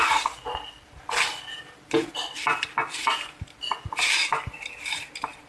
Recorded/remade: recorded